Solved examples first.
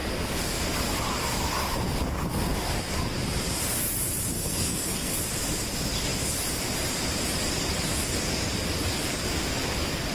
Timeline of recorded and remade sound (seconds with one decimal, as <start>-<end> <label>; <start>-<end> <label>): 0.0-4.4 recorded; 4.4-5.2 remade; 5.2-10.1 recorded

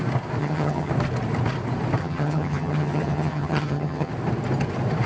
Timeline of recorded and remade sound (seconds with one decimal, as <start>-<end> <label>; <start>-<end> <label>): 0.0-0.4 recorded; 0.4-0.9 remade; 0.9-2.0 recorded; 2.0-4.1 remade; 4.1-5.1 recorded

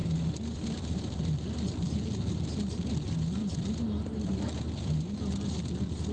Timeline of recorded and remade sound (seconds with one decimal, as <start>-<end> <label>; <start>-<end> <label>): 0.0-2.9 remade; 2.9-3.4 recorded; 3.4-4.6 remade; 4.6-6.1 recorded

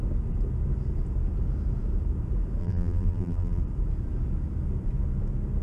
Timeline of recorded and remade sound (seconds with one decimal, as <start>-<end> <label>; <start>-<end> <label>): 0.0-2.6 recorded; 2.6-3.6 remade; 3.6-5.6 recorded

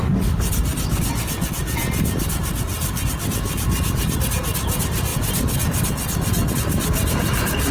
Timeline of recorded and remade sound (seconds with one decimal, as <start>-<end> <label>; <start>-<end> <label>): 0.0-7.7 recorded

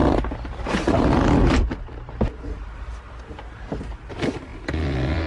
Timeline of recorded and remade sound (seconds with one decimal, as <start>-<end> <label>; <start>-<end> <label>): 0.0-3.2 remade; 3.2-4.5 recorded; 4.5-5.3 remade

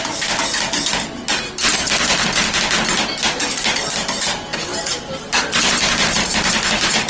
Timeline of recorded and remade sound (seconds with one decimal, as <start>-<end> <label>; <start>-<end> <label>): 0.0-7.1 recorded

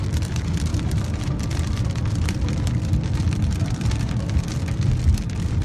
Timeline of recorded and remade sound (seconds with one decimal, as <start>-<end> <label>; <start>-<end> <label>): 0.0-5.6 remade